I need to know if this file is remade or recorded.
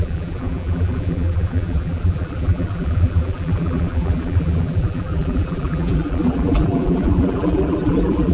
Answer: remade